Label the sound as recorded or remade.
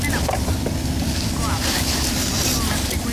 recorded